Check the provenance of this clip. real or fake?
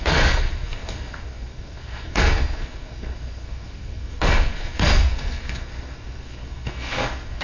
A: fake